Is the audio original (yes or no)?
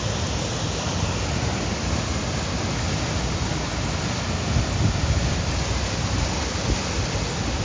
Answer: yes